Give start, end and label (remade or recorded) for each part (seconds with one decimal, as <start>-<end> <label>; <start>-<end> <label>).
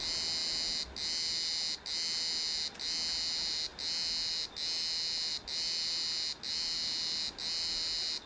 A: 0.0-8.3 recorded